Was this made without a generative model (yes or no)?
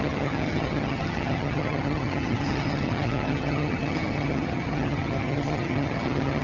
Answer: no